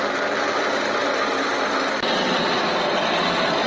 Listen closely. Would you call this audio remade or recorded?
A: recorded